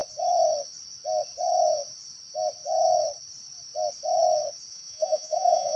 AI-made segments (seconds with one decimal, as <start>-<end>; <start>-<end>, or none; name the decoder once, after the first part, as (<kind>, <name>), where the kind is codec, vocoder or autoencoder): 4.7-5.8 (vocoder, Vocos)